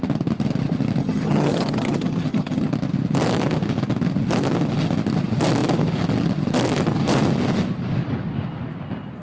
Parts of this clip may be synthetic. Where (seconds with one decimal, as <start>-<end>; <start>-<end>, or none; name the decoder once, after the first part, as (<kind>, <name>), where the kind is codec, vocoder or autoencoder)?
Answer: 1.0-2.7 (vocoder, HiFi-GAN)